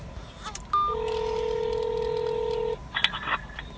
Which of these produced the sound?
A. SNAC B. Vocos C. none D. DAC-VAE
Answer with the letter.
C